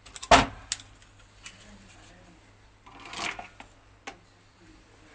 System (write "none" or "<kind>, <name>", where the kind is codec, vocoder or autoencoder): none